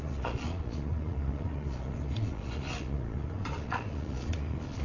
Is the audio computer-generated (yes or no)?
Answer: yes